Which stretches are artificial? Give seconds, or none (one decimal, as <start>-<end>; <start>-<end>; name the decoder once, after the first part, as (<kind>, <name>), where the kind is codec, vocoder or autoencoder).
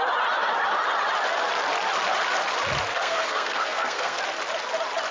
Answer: 2.9-4.2 (codec, SNAC)